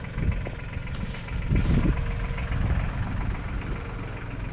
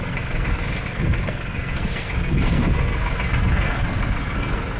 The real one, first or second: first